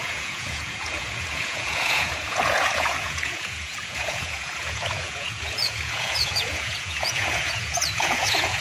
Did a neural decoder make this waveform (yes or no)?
yes